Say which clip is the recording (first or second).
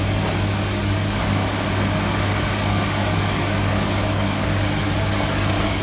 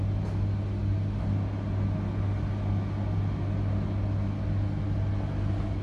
second